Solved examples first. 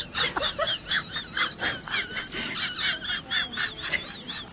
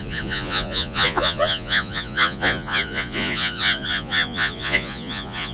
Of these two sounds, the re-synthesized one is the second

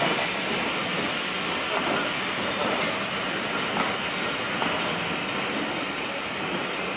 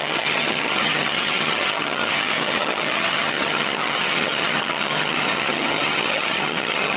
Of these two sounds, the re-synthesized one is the second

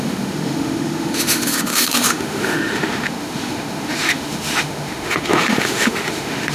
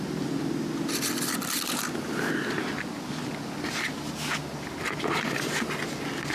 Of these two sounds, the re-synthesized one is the first